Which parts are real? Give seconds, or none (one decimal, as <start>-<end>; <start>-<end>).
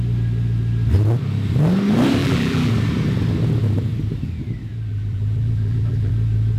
0.0-2.2; 2.7-4.9; 6.1-6.6